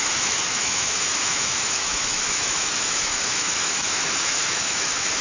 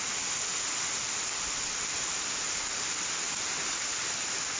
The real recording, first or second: second